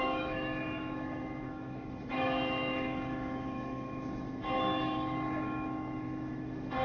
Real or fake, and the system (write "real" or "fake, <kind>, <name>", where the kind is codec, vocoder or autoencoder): fake, autoencoder, DAC-VAE